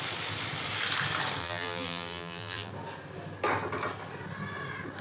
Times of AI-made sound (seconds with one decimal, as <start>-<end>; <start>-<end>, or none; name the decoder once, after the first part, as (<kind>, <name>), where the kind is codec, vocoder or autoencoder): 1.4-2.7 (vocoder, BigVGAN v2)